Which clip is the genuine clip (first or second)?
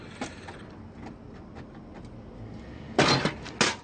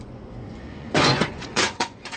first